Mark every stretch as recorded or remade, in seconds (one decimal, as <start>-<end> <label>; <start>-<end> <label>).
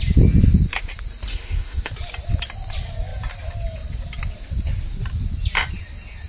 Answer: 0.0-1.3 recorded; 1.3-1.9 remade; 1.9-6.3 recorded